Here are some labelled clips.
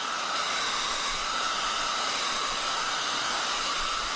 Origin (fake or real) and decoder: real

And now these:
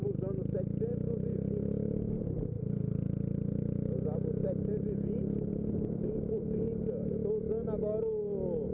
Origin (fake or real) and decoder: real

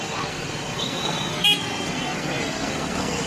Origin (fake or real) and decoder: fake, codec, SNAC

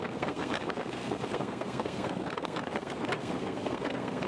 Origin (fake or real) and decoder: fake, codec, SNAC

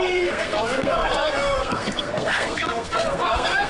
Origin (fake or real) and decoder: fake, codec, SNAC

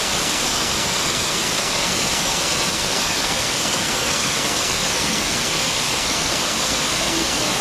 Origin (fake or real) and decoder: fake, codec, SNAC